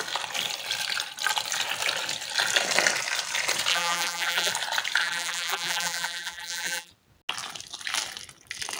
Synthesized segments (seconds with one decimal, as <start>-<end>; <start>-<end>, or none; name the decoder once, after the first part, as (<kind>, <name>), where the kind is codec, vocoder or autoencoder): 3.7-4.5 (vocoder, BigVGAN v2); 5.0-6.9